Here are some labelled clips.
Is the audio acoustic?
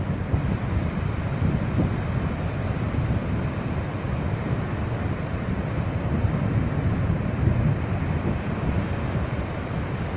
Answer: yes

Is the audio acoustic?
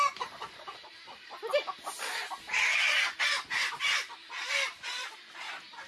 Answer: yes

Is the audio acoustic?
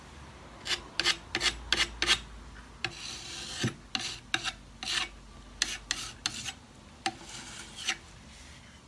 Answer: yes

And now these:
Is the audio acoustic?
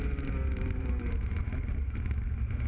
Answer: yes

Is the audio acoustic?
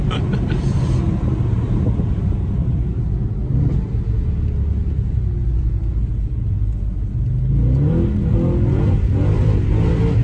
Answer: yes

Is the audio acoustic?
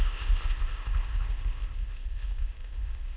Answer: no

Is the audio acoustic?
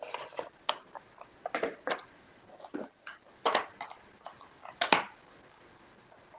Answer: yes